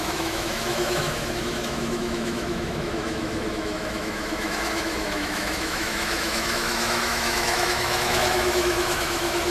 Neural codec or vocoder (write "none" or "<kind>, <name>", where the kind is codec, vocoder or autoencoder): autoencoder, DAC-VAE